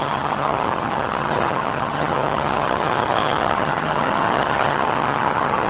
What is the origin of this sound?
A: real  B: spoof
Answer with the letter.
B